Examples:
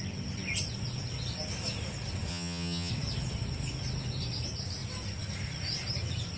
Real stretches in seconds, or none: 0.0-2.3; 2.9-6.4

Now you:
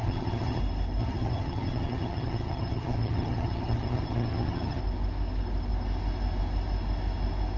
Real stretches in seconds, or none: 0.6-1.0; 4.8-7.6

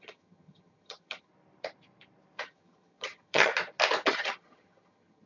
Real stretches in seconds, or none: 1.3-2.4; 3.5-4.1

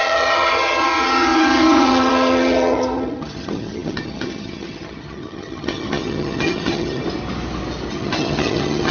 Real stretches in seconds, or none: 7.0-7.9

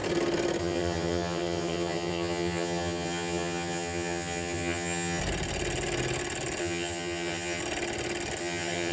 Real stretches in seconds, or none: 0.0-0.6; 5.2-6.6; 7.6-8.4

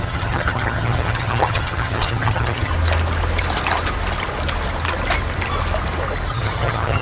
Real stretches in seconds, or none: 2.7-6.3

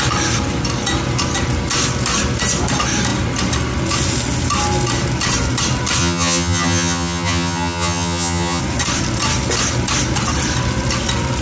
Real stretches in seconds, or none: 0.0-6.0; 8.6-11.4

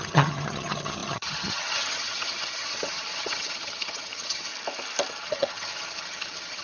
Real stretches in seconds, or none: 4.5-5.1